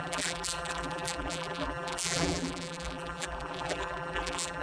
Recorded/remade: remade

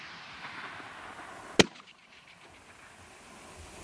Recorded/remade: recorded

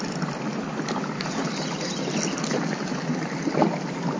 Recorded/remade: recorded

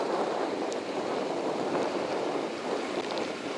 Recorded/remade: remade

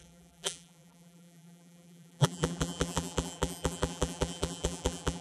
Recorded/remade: remade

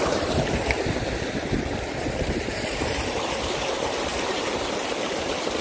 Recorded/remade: remade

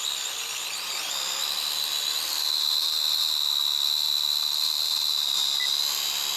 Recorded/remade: remade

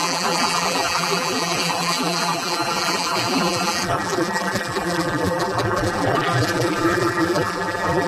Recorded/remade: remade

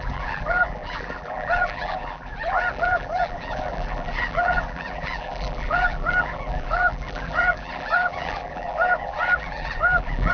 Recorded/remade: remade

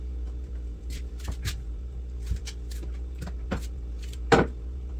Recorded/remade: remade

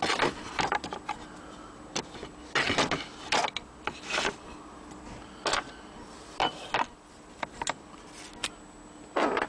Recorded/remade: recorded